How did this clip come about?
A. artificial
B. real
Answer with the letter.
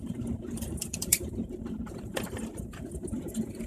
A